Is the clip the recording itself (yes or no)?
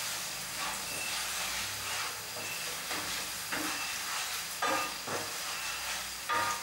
yes